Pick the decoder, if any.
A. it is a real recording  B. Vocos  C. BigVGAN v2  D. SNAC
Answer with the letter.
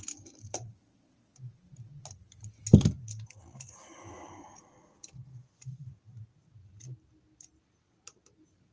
A